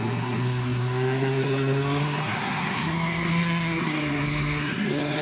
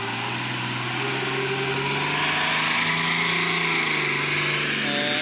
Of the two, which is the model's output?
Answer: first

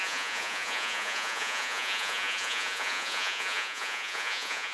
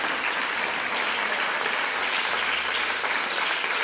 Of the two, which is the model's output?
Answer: first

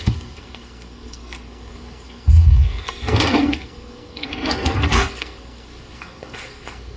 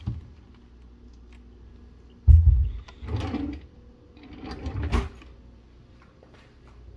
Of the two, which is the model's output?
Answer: first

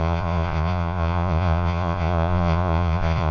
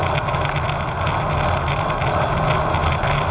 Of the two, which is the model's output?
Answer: first